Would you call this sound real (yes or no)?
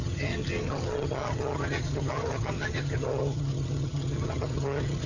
no